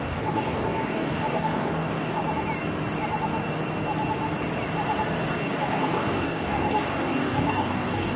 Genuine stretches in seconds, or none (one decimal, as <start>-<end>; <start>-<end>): 2.2-5.4